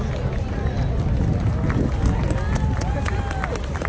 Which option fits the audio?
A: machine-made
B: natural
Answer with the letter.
B